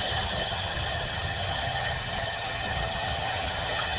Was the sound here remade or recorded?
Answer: remade